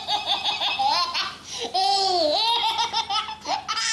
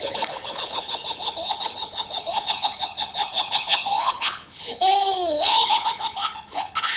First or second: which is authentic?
first